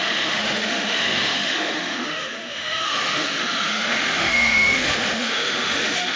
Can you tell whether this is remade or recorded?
remade